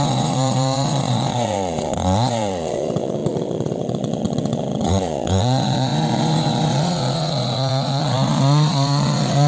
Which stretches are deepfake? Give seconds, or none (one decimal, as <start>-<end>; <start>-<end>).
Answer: 0.0-9.5